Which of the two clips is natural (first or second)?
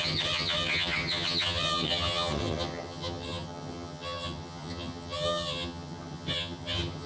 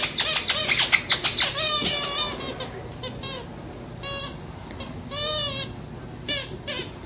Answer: second